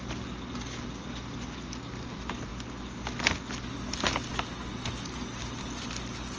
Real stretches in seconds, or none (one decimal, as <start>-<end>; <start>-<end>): 0.0-6.4